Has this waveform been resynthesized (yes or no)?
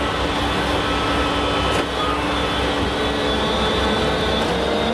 no